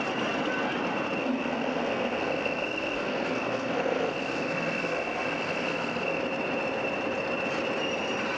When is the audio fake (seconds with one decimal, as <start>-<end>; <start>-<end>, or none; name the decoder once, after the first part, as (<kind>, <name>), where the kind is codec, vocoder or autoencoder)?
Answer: 1.2-6.2 (codec, SNAC)